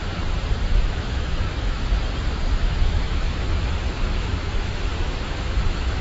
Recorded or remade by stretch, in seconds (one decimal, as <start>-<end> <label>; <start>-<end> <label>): 0.0-0.7 recorded; 0.7-2.0 remade; 2.0-2.5 recorded; 2.5-6.0 remade